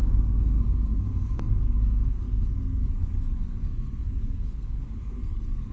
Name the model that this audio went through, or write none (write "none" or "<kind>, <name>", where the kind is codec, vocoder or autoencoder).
codec, SNAC